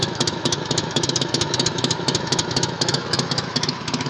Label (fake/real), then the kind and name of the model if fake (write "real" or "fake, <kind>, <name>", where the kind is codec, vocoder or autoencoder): fake, autoencoder, DAC-VAE